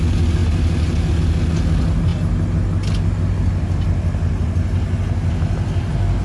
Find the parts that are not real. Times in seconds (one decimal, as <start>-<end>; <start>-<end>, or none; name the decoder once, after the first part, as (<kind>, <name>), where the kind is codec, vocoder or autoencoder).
none